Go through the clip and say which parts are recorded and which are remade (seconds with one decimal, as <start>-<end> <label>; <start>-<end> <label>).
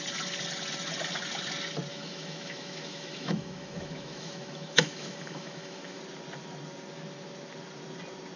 0.0-1.9 recorded; 1.9-6.0 remade; 6.0-8.4 recorded